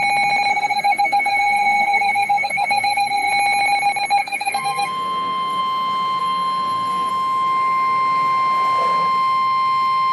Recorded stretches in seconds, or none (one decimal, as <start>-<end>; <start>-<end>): 0.0-0.5; 3.3-4.2; 5.6-6.2; 7.1-10.1